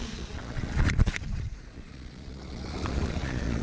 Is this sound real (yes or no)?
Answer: no